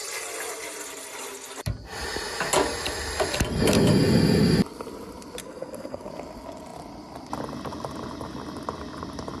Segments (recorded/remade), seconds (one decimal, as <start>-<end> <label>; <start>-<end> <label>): 0.0-5.4 recorded; 5.4-6.1 remade; 6.1-9.4 recorded